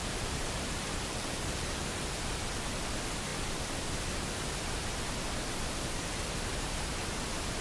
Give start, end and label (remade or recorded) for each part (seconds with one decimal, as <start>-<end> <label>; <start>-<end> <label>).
0.0-2.0 remade; 2.0-7.6 recorded